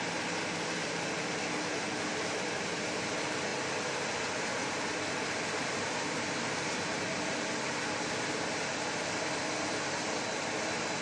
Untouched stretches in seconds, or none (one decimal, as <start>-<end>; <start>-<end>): 0.0-11.0